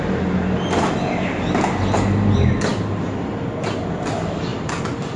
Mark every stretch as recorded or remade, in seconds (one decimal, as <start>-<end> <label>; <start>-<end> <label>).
0.0-5.2 remade